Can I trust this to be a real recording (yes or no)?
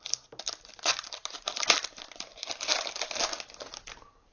yes